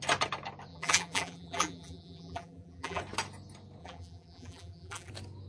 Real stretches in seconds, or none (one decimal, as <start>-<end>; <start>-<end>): 0.0-0.7; 3.0-3.8; 5.1-5.5

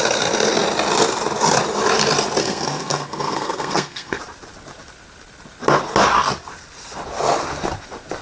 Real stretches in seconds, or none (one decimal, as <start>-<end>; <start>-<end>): 0.0-2.4; 4.2-8.2